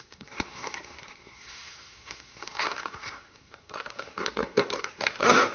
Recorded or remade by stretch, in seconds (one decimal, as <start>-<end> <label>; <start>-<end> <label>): 0.0-5.5 remade